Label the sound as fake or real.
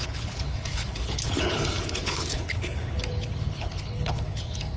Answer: fake